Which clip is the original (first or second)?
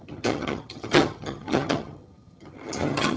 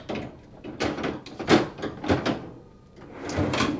second